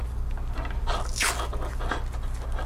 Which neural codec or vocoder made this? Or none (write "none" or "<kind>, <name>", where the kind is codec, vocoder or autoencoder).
none